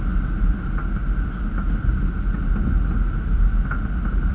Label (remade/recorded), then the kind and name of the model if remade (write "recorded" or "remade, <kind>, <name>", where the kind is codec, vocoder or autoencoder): recorded